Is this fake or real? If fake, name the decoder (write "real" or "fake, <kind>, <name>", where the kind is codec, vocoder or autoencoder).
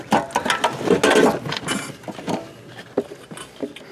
real